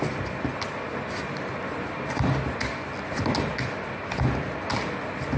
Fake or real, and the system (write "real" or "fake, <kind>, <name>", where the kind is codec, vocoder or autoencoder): real